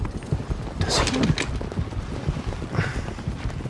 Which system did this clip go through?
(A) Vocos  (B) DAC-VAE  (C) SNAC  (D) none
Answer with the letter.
D